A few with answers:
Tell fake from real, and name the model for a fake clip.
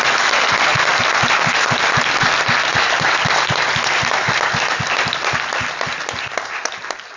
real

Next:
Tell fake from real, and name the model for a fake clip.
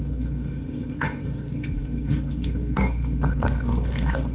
fake, codec, SNAC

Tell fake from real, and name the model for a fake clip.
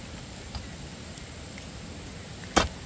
real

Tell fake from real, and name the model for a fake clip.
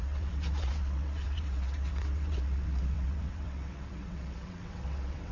fake, vocoder, WaveNeXt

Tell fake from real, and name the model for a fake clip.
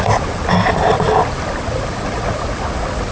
real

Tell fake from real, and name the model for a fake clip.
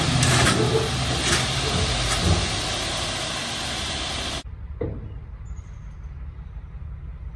real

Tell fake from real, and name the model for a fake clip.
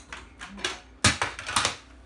real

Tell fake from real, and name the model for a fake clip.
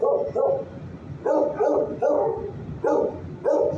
real